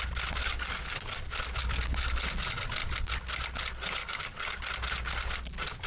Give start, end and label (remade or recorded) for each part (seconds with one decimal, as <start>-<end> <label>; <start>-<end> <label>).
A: 0.0-0.4 recorded; 0.4-1.2 remade; 1.2-1.6 recorded; 1.6-2.2 remade; 2.2-4.0 recorded; 4.0-4.6 remade; 4.6-5.9 recorded